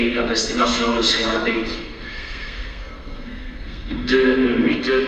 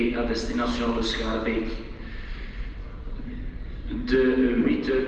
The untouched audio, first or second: second